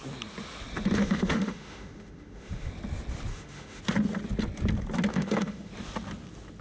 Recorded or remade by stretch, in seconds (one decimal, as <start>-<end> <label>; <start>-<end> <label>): 0.0-1.0 recorded; 1.0-2.7 remade; 2.7-3.3 recorded; 3.3-3.8 remade; 3.8-5.1 recorded; 5.1-5.7 remade; 5.7-6.6 recorded